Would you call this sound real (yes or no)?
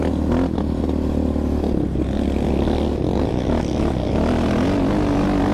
yes